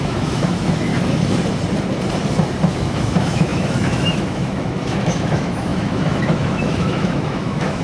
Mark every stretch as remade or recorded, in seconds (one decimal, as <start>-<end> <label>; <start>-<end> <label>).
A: 0.0-0.9 remade; 0.9-2.7 recorded; 2.7-7.8 remade